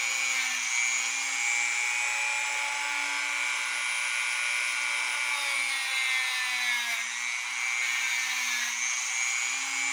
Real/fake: real